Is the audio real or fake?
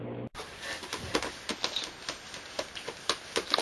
real